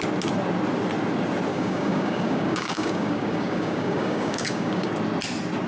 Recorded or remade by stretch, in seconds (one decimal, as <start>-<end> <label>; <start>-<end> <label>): 0.0-1.5 recorded; 1.5-4.9 remade; 4.9-5.7 recorded